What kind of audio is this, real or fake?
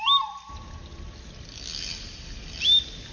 real